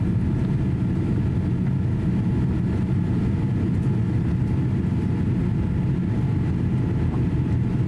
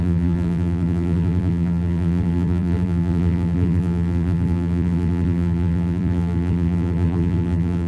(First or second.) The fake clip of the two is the second